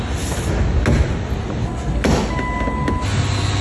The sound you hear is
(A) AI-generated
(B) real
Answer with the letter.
B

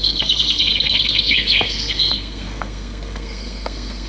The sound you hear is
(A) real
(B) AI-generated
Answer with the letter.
B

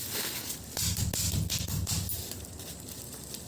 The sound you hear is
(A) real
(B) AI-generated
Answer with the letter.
A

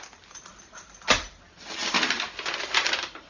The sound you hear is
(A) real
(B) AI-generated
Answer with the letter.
A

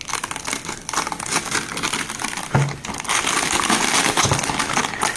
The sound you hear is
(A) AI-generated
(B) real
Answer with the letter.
B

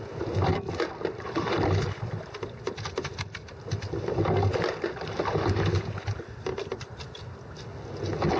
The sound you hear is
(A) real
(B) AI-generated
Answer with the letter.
A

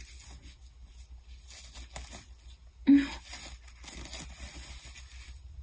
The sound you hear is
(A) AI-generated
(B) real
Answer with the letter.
B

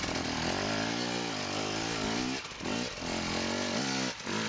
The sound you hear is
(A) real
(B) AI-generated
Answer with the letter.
A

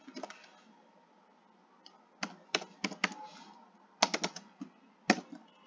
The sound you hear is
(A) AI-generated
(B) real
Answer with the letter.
B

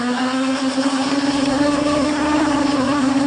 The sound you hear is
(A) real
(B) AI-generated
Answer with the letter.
B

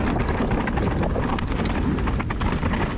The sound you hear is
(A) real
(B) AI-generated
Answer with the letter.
A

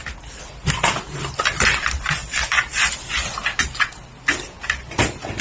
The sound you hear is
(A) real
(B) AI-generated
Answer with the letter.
A